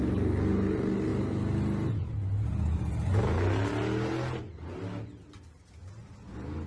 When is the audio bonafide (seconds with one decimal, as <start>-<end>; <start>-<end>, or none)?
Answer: 0.0-6.7